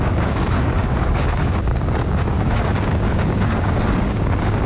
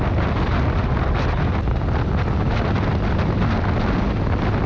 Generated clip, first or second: first